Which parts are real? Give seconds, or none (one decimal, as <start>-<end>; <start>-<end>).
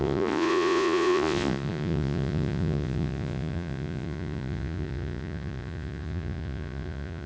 none